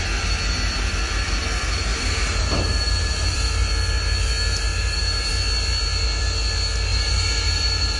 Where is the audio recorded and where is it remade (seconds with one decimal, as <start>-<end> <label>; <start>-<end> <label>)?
0.0-1.9 recorded; 1.9-3.5 remade; 3.5-4.7 recorded; 4.7-5.3 remade; 5.3-6.9 recorded; 6.9-8.0 remade